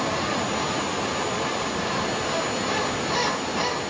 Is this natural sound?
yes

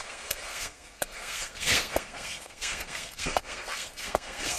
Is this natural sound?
no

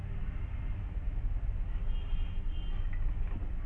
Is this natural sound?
yes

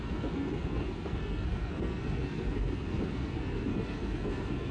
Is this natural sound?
no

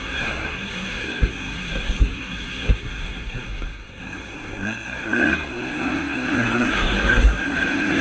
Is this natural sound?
no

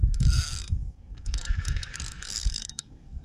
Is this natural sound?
no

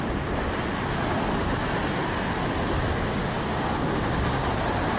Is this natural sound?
yes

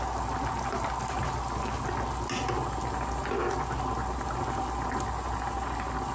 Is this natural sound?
yes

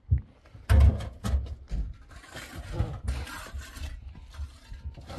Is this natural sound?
yes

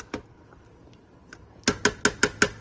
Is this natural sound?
yes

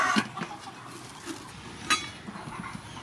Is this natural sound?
yes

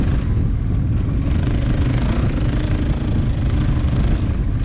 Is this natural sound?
yes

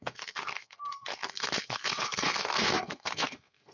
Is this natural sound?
no